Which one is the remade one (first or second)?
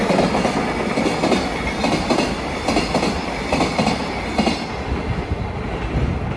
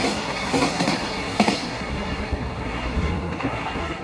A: second